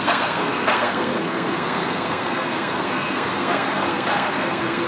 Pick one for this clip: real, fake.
fake